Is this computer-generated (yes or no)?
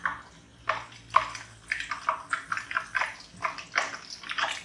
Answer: no